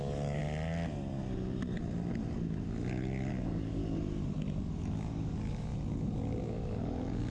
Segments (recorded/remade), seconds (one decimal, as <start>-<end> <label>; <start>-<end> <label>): 0.0-0.4 remade; 0.4-3.3 recorded; 3.3-3.8 remade; 3.8-4.6 recorded; 4.6-5.7 remade; 5.7-6.4 recorded; 6.4-7.3 remade